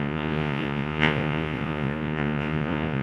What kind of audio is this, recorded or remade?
remade